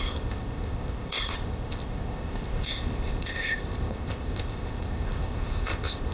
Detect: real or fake fake